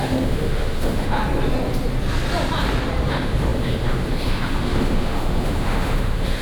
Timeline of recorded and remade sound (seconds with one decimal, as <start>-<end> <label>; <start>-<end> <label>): 0.0-1.2 remade; 1.2-3.1 recorded; 3.1-6.4 remade